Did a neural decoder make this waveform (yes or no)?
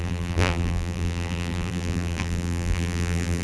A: yes